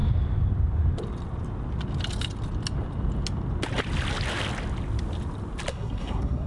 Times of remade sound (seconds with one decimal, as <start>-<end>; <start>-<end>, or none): 5.7-6.5

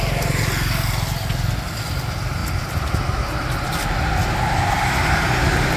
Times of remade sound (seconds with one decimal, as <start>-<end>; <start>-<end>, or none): none

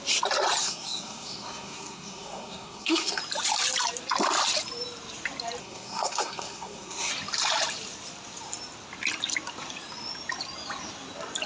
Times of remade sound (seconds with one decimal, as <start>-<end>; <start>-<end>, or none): 0.6-3.2; 5.6-7.1

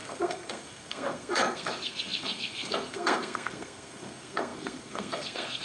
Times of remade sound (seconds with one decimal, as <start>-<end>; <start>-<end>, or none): 0.0-5.6

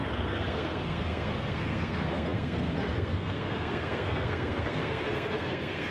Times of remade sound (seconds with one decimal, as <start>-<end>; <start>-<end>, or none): 0.0-5.9